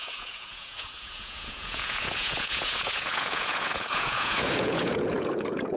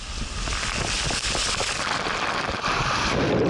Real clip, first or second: second